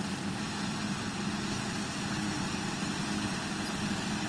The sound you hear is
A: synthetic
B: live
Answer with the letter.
B